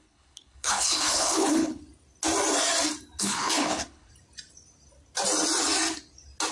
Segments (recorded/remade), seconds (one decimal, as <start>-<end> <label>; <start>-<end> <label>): 0.0-1.8 remade; 1.8-3.2 recorded; 3.2-4.1 remade; 4.1-6.5 recorded